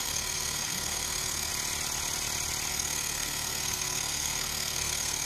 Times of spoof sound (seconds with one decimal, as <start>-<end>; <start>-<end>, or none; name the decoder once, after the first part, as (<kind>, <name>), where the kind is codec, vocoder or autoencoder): 0.0-1.5 (codec, SNAC); 2.7-5.3